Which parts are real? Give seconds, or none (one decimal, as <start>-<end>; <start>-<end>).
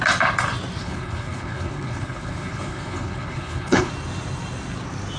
0.0-0.8; 3.9-5.2